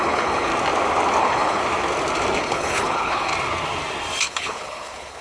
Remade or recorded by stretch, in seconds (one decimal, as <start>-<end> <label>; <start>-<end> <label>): 0.0-0.5 remade; 0.5-1.2 recorded; 1.2-1.6 remade; 1.6-2.4 recorded; 2.4-3.3 remade; 3.3-4.2 recorded; 4.2-5.2 remade